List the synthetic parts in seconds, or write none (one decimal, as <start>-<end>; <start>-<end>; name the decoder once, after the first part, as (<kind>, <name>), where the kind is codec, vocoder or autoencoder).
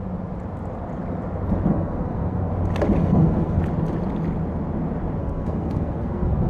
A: 1.7-2.5 (codec, SNAC); 3.0-3.6; 5.2-6.5